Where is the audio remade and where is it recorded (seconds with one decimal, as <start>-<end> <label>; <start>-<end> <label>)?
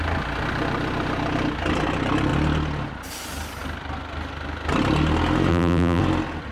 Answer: 0.0-5.5 recorded; 5.5-6.0 remade; 6.0-6.5 recorded